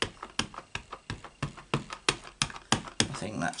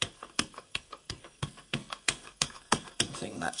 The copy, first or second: second